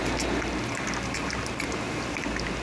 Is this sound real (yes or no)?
yes